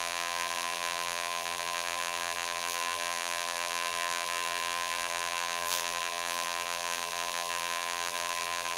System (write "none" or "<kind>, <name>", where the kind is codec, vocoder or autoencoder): vocoder, BigVGAN v2